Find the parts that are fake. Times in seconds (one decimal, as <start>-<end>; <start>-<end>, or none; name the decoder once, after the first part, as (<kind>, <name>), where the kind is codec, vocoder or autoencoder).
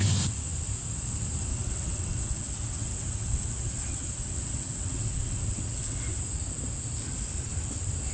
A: 1.5-6.2 (vocoder, WaveNeXt)